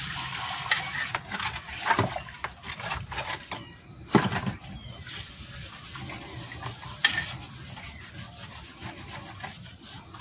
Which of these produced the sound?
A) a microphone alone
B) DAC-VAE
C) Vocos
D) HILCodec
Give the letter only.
A